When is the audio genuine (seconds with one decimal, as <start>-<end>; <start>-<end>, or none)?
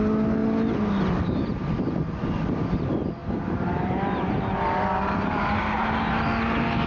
0.0-3.2; 6.1-6.9